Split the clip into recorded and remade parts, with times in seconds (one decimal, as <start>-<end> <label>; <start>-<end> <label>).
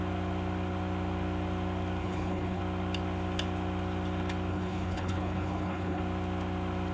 0.0-2.0 recorded; 2.0-2.6 remade; 2.6-4.5 recorded; 4.5-6.0 remade; 6.0-6.9 recorded